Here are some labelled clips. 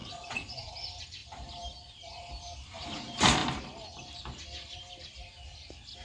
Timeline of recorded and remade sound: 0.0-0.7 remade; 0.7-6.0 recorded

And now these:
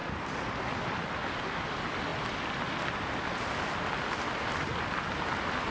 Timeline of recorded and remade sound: 0.0-5.7 recorded

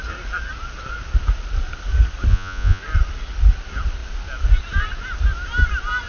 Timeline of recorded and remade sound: 0.0-2.3 recorded; 2.3-2.8 remade; 2.8-6.1 recorded

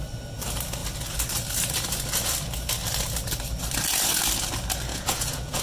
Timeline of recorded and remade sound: 0.0-4.9 recorded; 4.9-5.6 remade